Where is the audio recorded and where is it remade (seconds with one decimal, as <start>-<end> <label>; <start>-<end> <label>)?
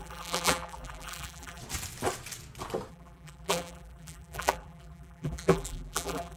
0.0-1.6 remade; 1.6-2.9 recorded; 2.9-6.4 remade